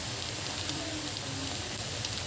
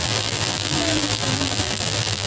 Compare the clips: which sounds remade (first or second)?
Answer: second